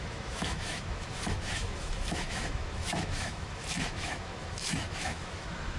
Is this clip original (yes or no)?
no